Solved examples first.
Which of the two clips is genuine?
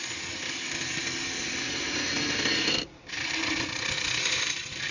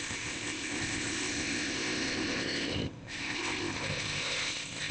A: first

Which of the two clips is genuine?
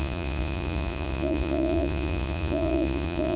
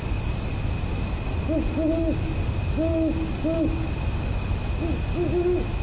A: second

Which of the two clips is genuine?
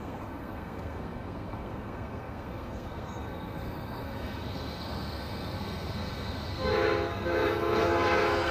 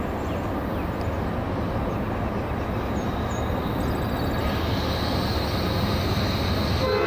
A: second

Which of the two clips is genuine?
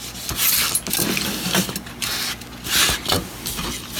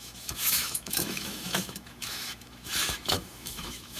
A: first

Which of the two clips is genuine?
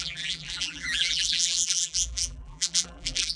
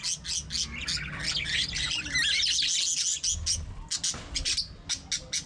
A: second